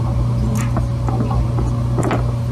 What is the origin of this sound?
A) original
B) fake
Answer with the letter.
A